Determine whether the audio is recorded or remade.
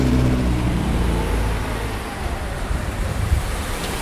remade